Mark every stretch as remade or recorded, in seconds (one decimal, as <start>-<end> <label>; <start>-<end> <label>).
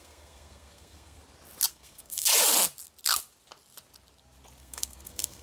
0.0-1.2 remade; 1.2-1.7 recorded; 1.7-2.3 remade; 2.3-4.6 recorded; 4.6-5.4 remade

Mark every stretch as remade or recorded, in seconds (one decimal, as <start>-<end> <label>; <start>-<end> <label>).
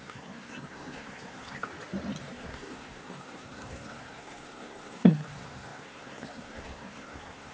0.0-1.7 remade; 1.7-2.2 recorded; 2.2-7.5 remade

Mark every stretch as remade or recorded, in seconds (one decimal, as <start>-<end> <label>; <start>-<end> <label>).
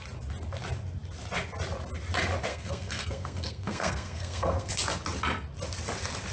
0.0-2.5 recorded; 2.5-4.7 remade; 4.7-6.3 recorded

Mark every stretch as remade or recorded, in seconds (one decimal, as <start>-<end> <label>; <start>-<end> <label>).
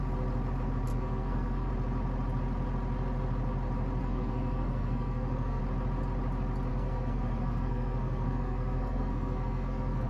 0.0-0.9 recorded; 0.9-1.7 remade; 1.7-4.0 recorded; 4.0-5.6 remade; 5.6-6.7 recorded; 6.7-10.1 remade